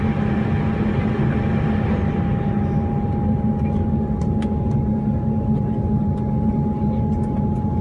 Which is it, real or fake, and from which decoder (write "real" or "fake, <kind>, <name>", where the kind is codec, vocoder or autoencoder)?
real